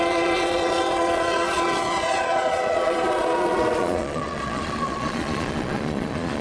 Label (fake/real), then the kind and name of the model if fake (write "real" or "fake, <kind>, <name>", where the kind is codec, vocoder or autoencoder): fake, vocoder, Vocos